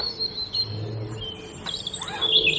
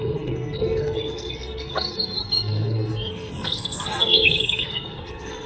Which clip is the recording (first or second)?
first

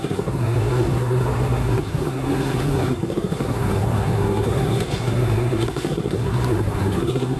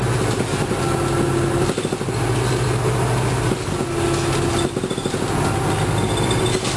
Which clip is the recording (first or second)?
second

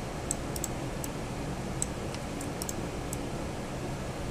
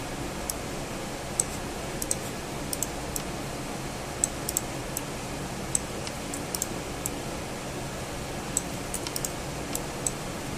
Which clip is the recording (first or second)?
second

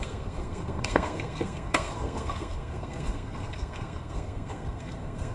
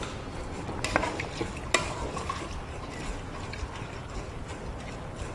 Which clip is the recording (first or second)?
second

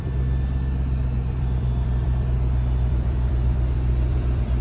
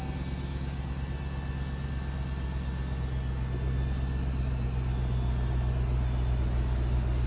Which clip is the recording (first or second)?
second